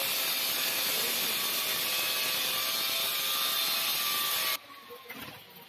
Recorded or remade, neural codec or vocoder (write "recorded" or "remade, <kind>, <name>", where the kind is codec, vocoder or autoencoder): recorded